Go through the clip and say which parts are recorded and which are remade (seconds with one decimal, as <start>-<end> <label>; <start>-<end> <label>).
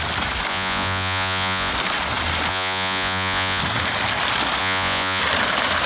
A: 0.0-0.5 recorded; 0.5-1.7 remade; 1.7-2.5 recorded; 2.5-3.6 remade; 3.6-4.6 recorded; 4.6-5.2 remade; 5.2-5.9 recorded